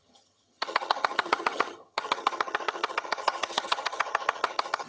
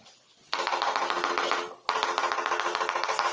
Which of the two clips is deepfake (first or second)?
first